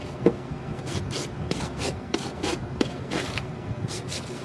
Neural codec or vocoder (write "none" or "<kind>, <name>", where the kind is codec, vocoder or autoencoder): codec, SNAC